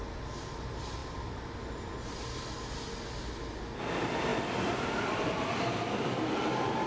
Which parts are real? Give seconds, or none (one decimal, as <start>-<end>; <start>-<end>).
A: 0.0-4.3; 5.2-6.9